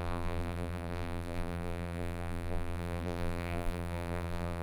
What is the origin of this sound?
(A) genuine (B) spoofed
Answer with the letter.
B